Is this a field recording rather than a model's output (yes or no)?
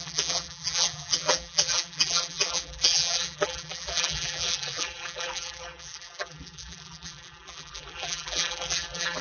no